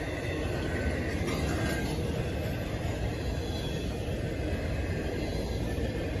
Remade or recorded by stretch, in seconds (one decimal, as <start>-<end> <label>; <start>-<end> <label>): 0.0-6.2 recorded